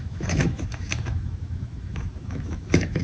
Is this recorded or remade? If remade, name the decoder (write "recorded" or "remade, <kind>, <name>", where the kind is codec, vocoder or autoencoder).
remade, autoencoder, DAC-VAE